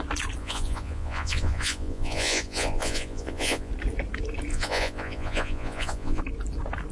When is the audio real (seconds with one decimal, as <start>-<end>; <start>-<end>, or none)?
0.0-0.4; 3.7-4.5; 6.2-6.9